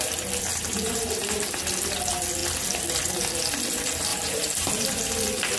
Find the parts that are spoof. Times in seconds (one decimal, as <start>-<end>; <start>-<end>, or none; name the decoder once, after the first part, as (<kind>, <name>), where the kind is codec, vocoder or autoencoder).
0.5-1.6 (vocoder, BigVGAN v2); 4.1-5.1